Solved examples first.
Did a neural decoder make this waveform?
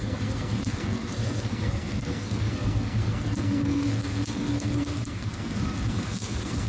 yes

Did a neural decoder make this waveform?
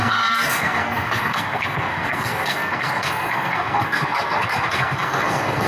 yes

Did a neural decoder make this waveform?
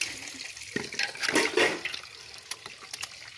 no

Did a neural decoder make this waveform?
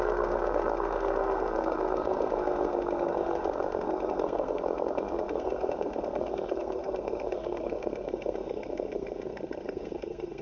yes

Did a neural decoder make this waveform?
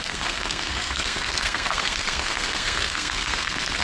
yes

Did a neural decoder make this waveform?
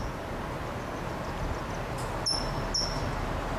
no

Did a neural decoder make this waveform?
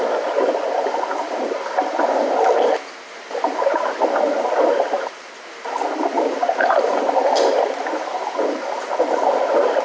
no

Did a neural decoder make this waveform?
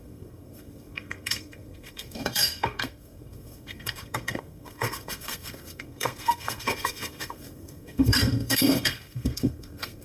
yes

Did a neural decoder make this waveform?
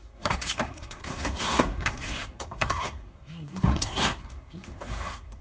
yes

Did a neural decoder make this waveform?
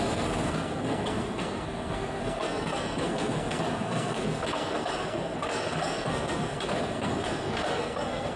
yes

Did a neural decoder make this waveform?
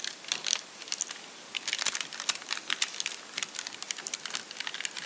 no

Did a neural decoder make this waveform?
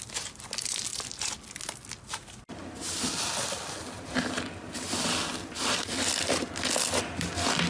no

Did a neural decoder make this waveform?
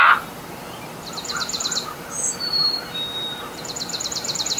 no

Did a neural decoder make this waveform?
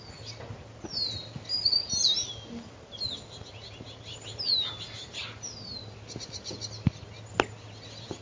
no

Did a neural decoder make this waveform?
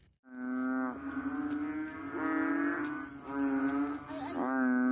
no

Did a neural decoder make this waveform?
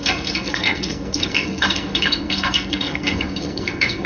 yes